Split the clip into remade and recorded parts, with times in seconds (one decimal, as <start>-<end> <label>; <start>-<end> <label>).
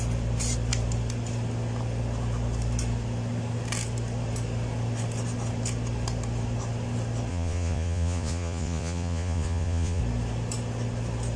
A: 0.0-7.3 recorded; 7.3-10.0 remade; 10.0-11.4 recorded